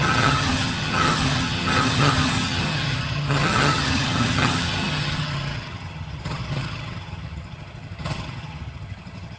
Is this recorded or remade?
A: remade